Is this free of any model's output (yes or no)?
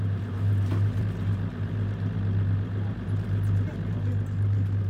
yes